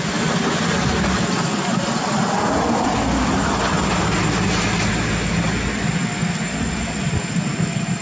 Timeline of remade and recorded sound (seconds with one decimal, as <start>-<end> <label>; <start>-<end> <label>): 0.0-8.0 recorded